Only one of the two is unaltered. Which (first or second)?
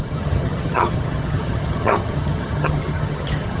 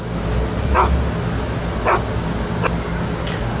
second